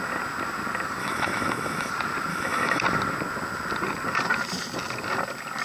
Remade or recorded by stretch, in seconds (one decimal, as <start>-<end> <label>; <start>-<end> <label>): 0.0-1.0 recorded; 1.0-1.9 remade; 1.9-2.3 recorded; 2.3-2.8 remade; 2.8-5.6 recorded